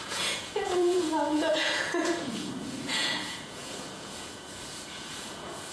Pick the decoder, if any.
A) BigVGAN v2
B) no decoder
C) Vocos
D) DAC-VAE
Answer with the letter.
C